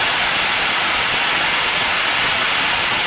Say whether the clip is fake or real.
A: fake